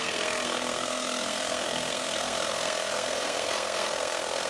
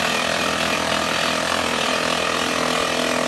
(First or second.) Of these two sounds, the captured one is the second